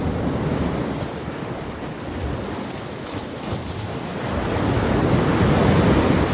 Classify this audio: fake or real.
real